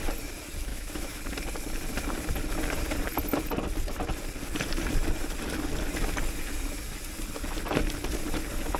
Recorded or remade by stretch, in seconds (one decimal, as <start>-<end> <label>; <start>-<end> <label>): 0.0-0.7 recorded; 0.7-1.2 remade; 1.2-8.8 recorded